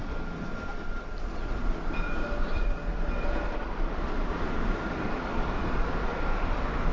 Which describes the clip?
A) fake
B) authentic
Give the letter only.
B